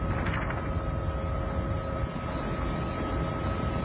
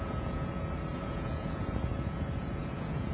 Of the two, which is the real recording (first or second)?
first